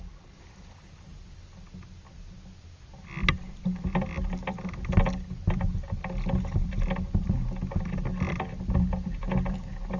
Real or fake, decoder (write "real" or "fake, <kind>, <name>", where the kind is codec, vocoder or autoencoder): real